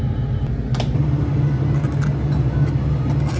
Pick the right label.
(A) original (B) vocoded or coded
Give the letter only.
A